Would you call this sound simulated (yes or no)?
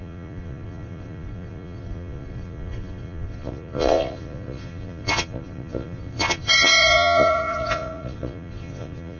yes